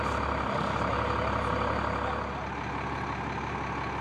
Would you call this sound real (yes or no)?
yes